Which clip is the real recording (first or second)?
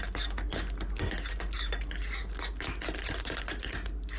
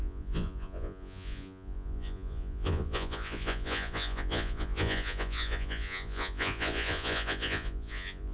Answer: first